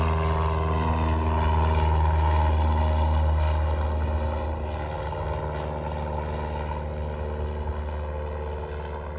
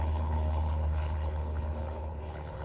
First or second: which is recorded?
first